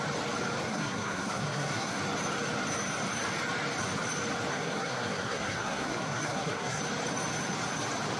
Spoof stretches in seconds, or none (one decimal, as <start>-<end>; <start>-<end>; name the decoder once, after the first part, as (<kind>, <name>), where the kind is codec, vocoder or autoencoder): 0.7-2.0 (codec, SNAC); 4.5-6.8